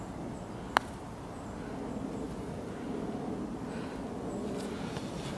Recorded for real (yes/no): yes